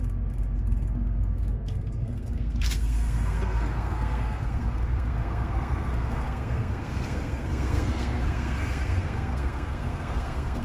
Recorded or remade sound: remade